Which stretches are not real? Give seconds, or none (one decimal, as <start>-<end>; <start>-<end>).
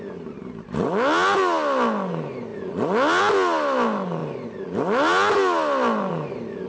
none